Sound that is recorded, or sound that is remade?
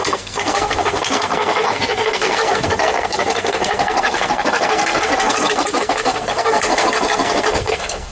remade